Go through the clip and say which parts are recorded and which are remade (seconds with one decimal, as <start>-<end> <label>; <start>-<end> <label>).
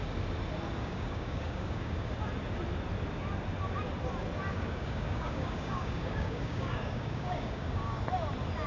0.0-0.8 recorded; 0.8-2.1 remade; 2.1-4.5 recorded; 4.5-8.0 remade; 8.0-8.7 recorded